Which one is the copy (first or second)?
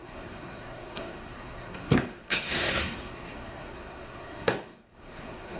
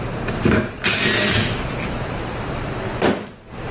first